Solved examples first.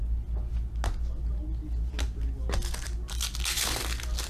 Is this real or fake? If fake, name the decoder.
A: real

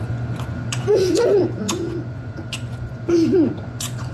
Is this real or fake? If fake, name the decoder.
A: fake, vocoder, Vocos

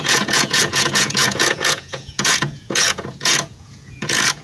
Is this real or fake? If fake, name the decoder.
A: fake, vocoder, Vocos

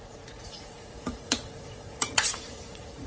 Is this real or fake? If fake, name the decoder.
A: fake, vocoder, Vocos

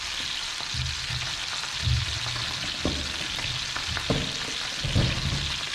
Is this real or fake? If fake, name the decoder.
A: real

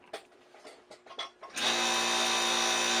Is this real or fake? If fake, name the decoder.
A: real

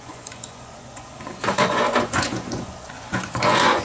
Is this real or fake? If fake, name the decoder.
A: fake, vocoder, Vocos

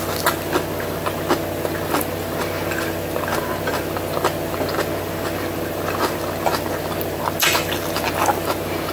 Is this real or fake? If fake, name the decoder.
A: real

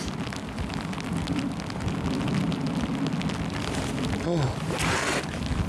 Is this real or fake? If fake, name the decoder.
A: real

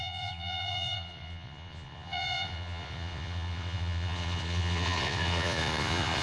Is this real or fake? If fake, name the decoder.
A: fake, vocoder, Vocos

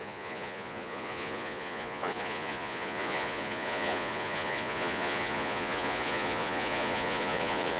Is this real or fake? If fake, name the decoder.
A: fake, vocoder, Vocos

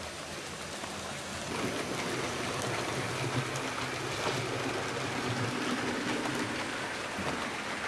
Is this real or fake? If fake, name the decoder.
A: real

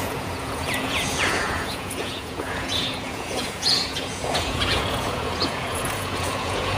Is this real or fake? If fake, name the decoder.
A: fake, vocoder, Vocos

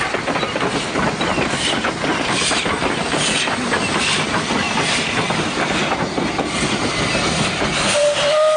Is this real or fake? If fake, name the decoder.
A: real